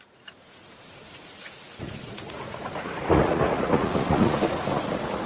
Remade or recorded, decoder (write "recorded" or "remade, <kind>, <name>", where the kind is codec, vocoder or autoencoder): remade, vocoder, Vocos